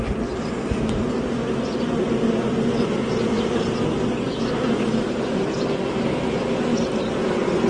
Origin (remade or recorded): recorded